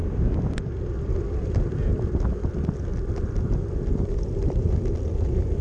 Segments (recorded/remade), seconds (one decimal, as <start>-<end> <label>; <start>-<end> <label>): 0.0-2.2 remade; 2.2-2.9 recorded; 2.9-5.0 remade; 5.0-5.6 recorded